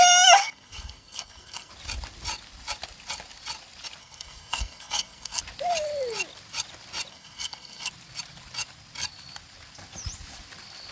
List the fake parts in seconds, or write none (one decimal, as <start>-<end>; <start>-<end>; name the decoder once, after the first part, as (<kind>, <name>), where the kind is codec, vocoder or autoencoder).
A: 0.4-1.7 (codec, SNAC); 4.0-5.4; 7.1-7.9